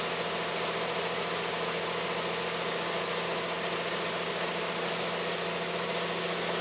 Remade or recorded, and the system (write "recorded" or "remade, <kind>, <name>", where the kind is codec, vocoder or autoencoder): recorded